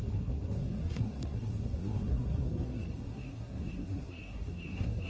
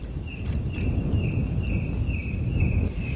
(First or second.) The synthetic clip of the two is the first